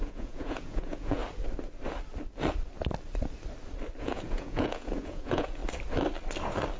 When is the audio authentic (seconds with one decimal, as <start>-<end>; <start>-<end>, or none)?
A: 1.2-4.0; 5.6-6.8